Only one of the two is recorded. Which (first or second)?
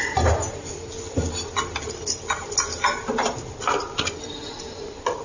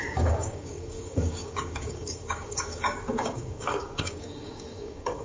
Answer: first